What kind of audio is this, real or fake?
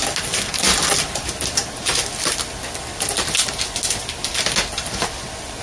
real